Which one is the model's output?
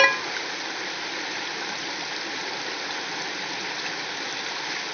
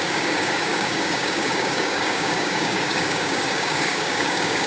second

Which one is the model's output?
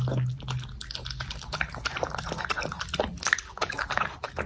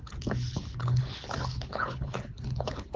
second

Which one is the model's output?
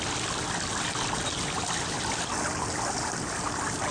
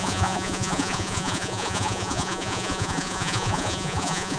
second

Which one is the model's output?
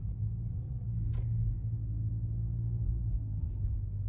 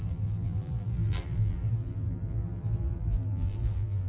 second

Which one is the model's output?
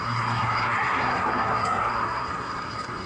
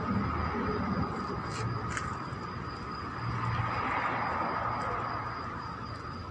first